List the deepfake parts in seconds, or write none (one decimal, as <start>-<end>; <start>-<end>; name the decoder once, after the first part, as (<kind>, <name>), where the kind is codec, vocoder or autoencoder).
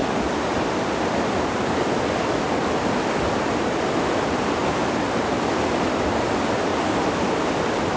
1.3-4.6 (vocoder, BigVGAN v2); 5.7-6.7; 7.2-8.0